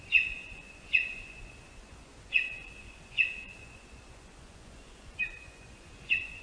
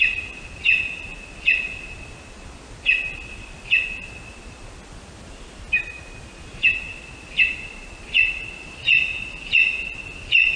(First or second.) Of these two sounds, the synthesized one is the first